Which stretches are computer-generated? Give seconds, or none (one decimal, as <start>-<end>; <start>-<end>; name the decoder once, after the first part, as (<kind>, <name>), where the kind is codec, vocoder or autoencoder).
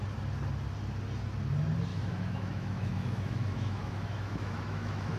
1.9-5.2 (autoencoder, DAC-VAE)